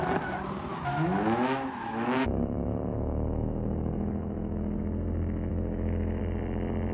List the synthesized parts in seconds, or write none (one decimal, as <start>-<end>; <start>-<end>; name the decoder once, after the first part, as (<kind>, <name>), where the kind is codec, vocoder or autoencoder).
0.7-4.8 (autoencoder, DAC-VAE); 5.5-6.2